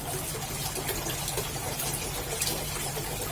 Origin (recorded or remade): recorded